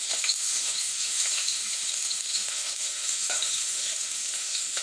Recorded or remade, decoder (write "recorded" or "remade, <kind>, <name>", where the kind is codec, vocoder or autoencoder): remade, autoencoder, DAC-VAE